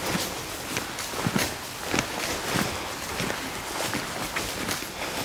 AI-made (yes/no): no